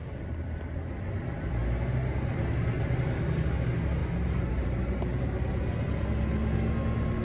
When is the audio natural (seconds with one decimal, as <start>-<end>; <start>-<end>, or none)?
0.6-4.0; 5.3-7.2